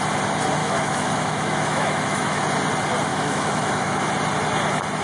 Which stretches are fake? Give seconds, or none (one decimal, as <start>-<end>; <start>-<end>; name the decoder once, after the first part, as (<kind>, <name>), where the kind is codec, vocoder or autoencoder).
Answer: 0.6-2.4 (autoencoder, DAC-VAE); 3.1-4.1